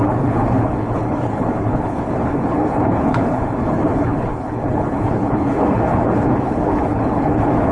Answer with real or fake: fake